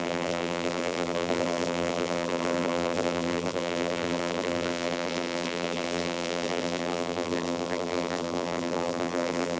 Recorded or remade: remade